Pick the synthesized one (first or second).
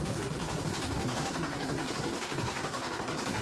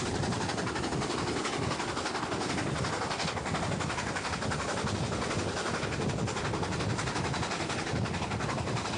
first